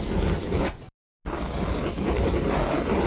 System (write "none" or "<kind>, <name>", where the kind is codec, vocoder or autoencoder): none